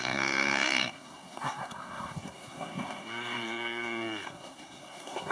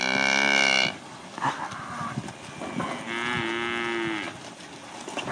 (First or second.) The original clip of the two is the second